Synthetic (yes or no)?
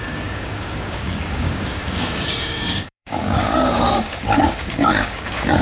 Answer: yes